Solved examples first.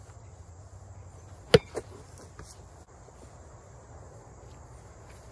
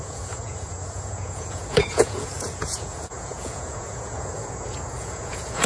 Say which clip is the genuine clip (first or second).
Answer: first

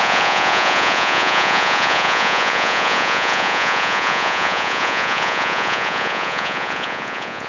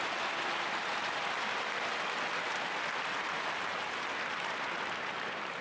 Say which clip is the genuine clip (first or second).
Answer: second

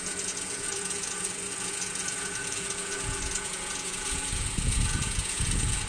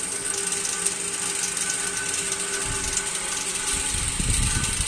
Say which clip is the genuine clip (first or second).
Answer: second